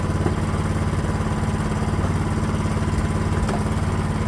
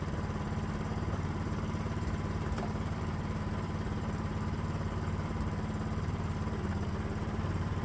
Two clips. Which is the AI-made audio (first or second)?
second